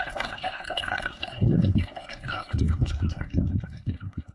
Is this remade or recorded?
remade